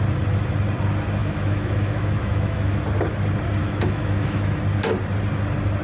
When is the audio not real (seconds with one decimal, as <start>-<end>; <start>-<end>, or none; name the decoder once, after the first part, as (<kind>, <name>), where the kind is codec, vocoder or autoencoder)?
1.2-2.8 (autoencoder, DAC-VAE); 3.6-4.6